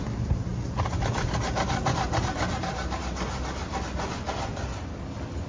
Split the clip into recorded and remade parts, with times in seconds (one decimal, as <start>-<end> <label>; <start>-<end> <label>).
0.0-0.5 recorded; 0.5-3.7 remade; 3.7-5.5 recorded